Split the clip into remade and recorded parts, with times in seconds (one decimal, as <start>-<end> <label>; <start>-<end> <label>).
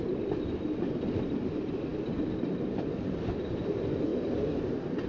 0.0-5.1 recorded